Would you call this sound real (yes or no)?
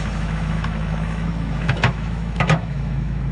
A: no